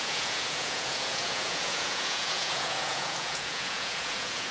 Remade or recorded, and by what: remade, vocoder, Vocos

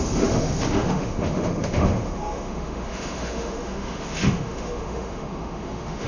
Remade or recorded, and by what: remade, autoencoder, DAC-VAE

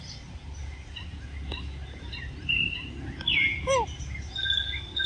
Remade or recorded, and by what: recorded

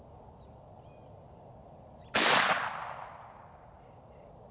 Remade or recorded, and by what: recorded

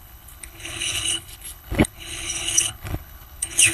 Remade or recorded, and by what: remade, codec, HILCodec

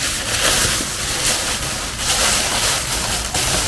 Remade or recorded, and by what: recorded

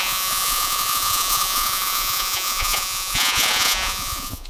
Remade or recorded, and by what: remade, vocoder, Vocos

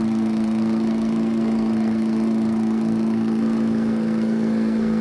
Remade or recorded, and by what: remade, codec, SNAC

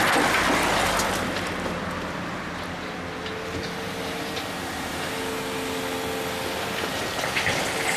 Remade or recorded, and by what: recorded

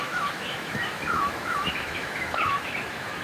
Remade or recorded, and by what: remade, autoencoder, DAC-VAE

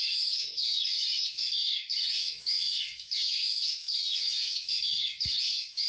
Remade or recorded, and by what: remade, autoencoder, DAC-VAE